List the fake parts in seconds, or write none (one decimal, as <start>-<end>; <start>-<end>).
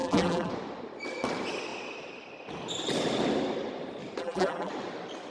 0.0-0.5; 4.2-4.7